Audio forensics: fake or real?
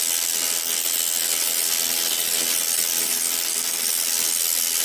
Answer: real